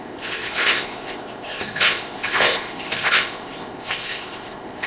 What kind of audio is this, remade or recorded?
remade